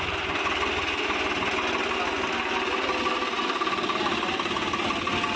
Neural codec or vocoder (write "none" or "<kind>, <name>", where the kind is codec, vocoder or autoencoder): none